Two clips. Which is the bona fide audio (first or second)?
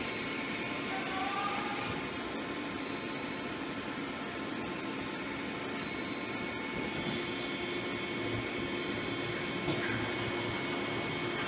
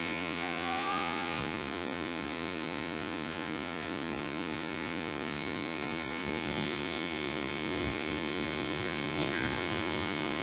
first